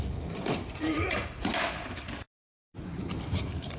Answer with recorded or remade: remade